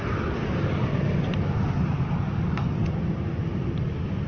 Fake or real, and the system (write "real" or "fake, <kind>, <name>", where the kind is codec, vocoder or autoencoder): real